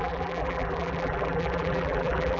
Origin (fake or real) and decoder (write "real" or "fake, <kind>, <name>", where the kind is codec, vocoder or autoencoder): fake, vocoder, BigVGAN v2